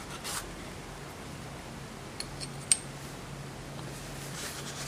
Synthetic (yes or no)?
no